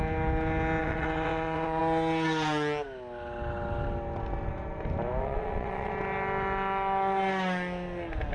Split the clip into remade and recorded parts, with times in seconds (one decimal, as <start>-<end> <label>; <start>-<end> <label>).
0.0-0.8 recorded; 0.8-1.8 remade; 1.8-5.2 recorded; 5.2-5.9 remade; 5.9-8.3 recorded

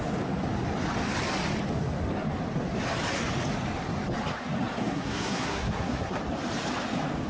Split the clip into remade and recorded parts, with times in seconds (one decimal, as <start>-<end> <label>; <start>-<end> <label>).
0.0-4.8 recorded; 4.8-6.2 remade; 6.2-7.3 recorded

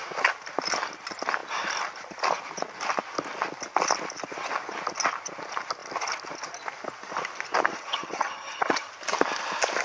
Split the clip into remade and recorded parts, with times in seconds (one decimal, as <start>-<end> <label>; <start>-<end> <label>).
0.0-7.7 recorded; 7.7-8.9 remade; 8.9-9.8 recorded